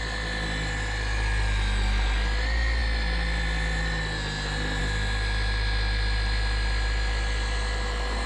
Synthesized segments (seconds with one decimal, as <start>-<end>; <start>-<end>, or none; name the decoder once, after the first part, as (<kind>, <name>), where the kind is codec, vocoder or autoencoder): none